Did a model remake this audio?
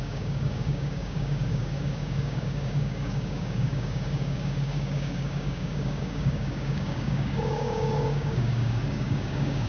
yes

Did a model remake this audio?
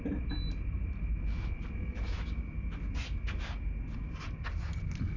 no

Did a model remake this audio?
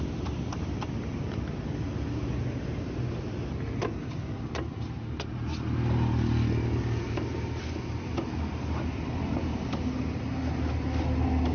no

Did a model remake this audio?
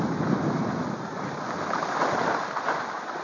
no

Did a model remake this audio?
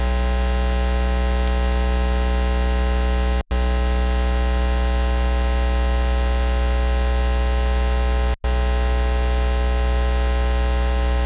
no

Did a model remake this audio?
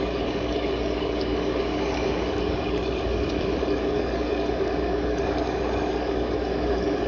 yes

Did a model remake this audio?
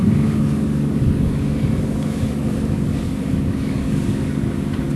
yes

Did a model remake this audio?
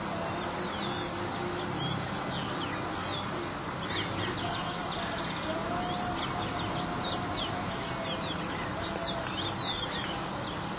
no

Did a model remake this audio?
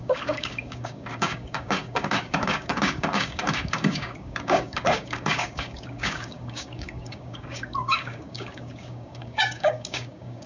yes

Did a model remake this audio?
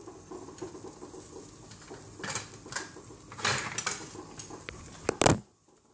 no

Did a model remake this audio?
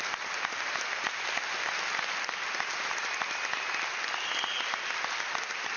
no